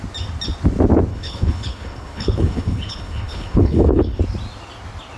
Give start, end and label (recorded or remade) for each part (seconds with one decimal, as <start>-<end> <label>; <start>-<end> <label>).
0.0-1.1 recorded; 1.1-4.2 remade; 4.2-5.2 recorded